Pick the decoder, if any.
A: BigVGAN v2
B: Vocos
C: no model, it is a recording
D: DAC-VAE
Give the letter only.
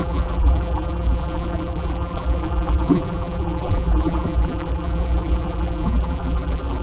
A